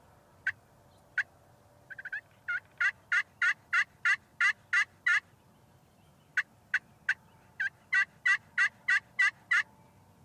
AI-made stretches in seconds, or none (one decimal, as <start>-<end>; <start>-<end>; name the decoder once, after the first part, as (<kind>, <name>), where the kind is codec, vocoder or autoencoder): none